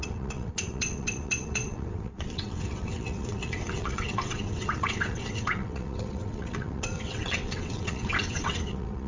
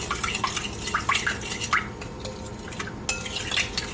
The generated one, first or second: first